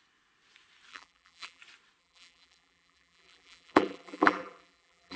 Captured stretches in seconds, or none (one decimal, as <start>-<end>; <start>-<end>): 0.0-0.9; 1.6-2.0